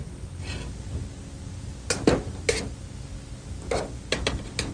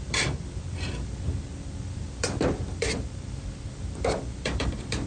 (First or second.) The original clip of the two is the first